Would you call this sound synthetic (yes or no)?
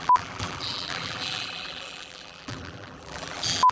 yes